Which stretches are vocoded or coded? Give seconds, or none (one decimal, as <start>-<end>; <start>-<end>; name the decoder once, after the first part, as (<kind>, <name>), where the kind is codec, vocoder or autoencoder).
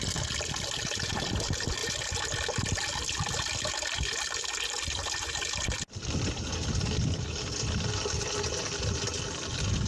none